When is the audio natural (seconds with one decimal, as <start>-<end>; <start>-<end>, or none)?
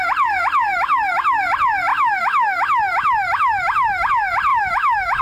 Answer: 0.0-0.7; 1.4-1.9; 4.1-4.5